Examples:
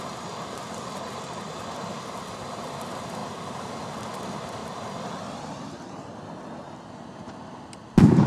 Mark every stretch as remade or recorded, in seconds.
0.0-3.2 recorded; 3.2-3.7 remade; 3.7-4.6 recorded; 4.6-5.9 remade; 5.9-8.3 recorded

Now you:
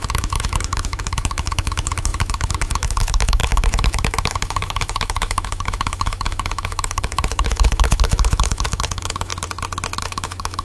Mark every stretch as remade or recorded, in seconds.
0.0-9.3 remade; 9.3-10.0 recorded; 10.0-10.6 remade

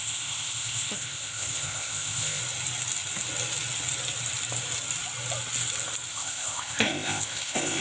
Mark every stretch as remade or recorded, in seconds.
0.0-2.4 remade; 2.4-6.1 recorded; 6.1-7.8 remade

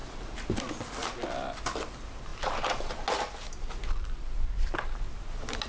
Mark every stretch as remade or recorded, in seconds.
0.0-5.7 recorded